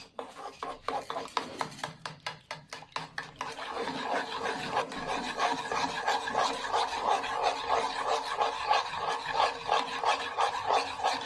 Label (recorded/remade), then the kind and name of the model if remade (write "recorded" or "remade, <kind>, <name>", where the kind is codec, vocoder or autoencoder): recorded